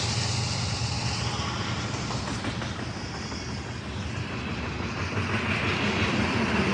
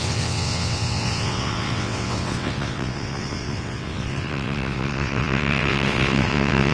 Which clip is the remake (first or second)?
second